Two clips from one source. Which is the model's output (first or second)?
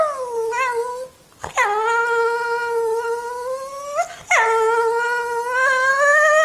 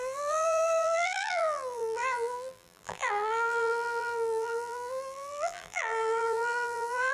second